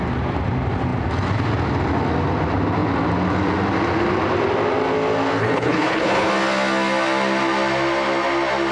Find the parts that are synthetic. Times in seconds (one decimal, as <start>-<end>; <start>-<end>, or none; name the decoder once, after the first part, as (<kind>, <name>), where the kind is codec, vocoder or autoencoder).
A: 5.4-6.3 (codec, HILCodec)